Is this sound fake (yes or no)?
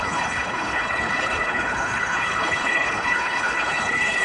yes